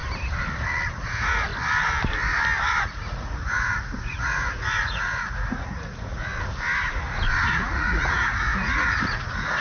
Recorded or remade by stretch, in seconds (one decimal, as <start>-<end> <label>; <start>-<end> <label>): 0.0-0.9 recorded; 0.9-1.5 remade; 1.5-2.8 recorded; 2.8-6.3 remade; 6.3-7.5 recorded; 7.5-9.6 remade